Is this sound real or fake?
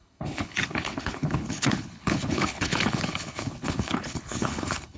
fake